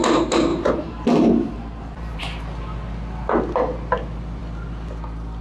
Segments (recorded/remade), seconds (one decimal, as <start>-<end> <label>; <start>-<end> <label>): 0.0-0.5 recorded; 0.5-2.2 remade; 2.2-5.4 recorded